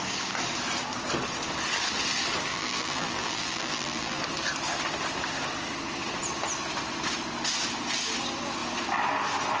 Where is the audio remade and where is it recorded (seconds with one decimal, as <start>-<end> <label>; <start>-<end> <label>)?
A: 0.0-2.5 recorded; 2.5-4.2 remade; 4.2-9.6 recorded